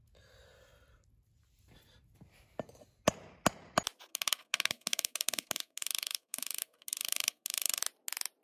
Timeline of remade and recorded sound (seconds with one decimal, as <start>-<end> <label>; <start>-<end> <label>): 0.0-4.1 recorded; 4.1-7.8 remade; 7.8-8.4 recorded